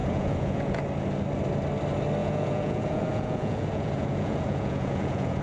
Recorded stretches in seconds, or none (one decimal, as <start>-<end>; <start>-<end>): 0.8-2.2